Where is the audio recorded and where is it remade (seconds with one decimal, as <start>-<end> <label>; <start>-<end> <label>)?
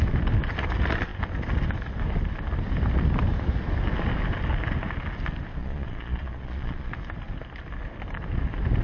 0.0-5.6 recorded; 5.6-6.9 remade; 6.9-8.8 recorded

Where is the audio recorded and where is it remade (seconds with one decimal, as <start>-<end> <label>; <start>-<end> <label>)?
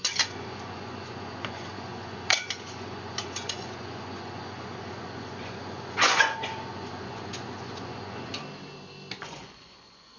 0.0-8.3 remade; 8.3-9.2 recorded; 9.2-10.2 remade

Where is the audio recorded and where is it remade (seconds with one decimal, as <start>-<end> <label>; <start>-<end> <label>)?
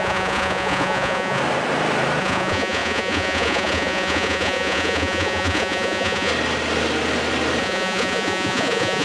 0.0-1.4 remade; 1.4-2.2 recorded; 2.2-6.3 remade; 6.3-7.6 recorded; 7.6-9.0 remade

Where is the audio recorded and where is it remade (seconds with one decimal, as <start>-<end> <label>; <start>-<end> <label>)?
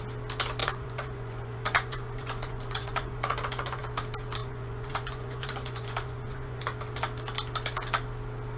0.0-0.6 recorded; 0.6-3.8 remade; 3.8-4.4 recorded; 4.4-6.6 remade; 6.6-8.6 recorded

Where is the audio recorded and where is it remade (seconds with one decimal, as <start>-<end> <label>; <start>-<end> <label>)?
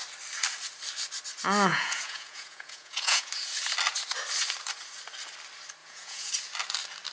0.0-1.7 recorded; 1.7-3.3 remade; 3.3-5.8 recorded; 5.8-6.3 remade; 6.3-7.1 recorded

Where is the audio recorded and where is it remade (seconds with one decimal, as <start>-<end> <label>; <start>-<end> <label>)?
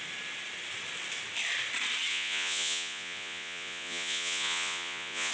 0.0-2.1 recorded; 2.1-5.3 remade